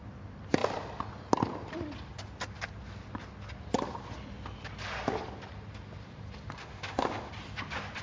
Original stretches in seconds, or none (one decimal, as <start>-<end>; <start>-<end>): 0.0-6.6; 7.3-8.0